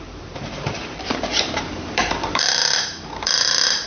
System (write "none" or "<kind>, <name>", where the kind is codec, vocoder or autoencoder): vocoder, BigVGAN v2